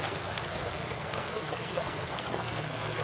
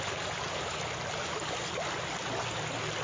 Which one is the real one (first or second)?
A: second